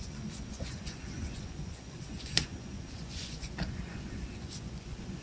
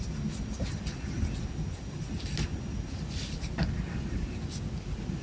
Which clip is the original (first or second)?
second